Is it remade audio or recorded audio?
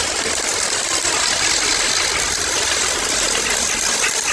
recorded